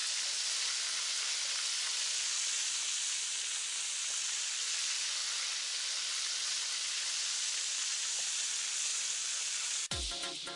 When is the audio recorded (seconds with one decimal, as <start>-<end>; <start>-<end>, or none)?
0.0-10.6